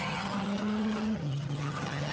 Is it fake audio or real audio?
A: fake